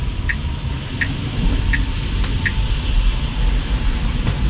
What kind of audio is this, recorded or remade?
recorded